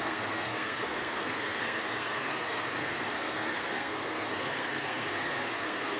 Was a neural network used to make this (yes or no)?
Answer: yes